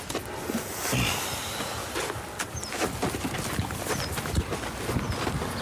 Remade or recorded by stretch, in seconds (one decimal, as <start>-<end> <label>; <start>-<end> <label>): 0.0-5.6 recorded